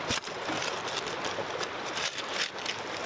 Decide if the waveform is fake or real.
real